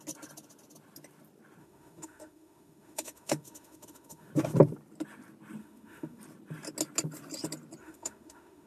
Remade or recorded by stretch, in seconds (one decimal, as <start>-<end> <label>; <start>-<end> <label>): 0.0-1.6 recorded; 1.6-4.3 remade; 4.3-5.6 recorded; 5.6-6.2 remade; 6.2-7.8 recorded; 7.8-8.7 remade